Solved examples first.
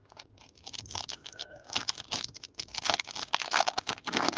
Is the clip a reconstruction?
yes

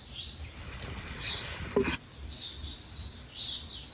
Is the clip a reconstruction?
no